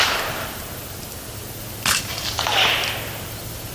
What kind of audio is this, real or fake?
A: real